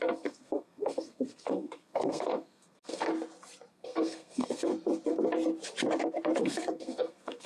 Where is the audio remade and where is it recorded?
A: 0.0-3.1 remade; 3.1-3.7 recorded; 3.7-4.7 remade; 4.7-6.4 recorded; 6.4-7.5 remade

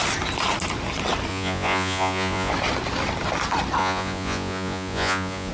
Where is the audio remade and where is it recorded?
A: 0.0-1.3 recorded; 1.3-2.5 remade; 2.5-3.8 recorded; 3.8-5.5 remade

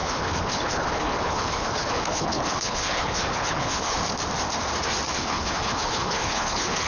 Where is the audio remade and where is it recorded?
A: 0.0-4.0 remade; 4.0-5.1 recorded; 5.1-6.9 remade